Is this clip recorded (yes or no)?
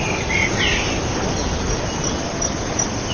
yes